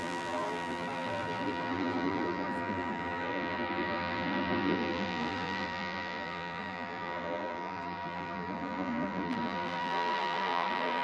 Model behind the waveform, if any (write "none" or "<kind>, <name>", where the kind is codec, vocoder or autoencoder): vocoder, BigVGAN v2